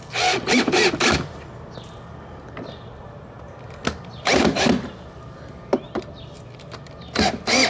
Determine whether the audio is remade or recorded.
recorded